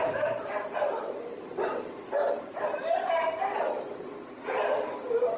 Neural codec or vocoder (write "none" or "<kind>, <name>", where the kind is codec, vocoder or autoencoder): none